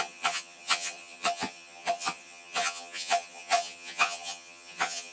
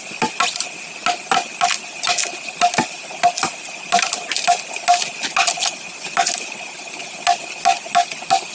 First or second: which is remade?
first